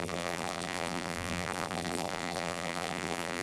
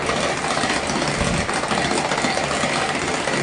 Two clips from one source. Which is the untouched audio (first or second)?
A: second